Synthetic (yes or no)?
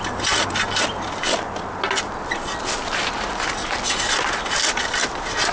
no